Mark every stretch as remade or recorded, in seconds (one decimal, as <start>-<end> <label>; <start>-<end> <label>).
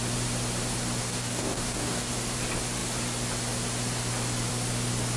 0.0-1.0 recorded; 1.0-2.1 remade; 2.1-5.2 recorded